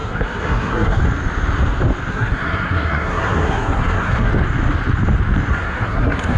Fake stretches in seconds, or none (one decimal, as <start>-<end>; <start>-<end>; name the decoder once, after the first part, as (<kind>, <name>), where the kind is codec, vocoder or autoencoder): 0.0-1.0 (codec, SNAC); 2.1-4.3; 5.5-6.4